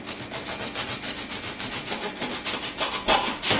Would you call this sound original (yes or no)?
yes